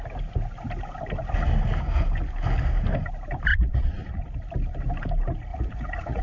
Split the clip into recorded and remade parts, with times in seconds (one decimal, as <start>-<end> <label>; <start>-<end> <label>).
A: 0.0-3.5 recorded; 3.5-4.2 remade; 4.2-5.5 recorded; 5.5-6.2 remade